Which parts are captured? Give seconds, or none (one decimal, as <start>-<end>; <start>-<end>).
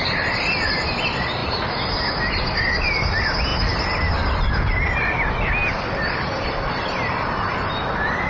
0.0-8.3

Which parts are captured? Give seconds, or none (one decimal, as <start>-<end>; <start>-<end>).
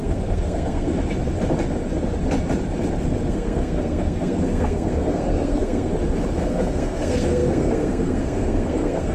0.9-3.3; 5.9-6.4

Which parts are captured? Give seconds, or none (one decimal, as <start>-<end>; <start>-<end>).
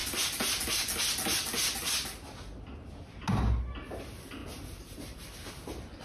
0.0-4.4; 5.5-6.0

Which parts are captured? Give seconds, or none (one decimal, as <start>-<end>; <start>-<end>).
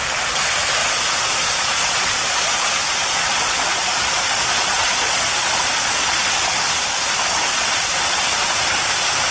0.0-0.8; 5.3-7.5; 8.2-9.3